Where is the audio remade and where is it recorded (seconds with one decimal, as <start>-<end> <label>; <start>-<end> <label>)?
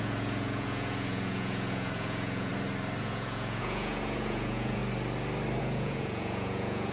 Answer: 0.0-2.5 remade; 2.5-3.0 recorded; 3.0-4.8 remade; 4.8-5.6 recorded; 5.6-6.9 remade